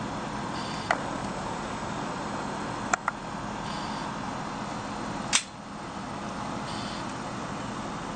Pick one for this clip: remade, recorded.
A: recorded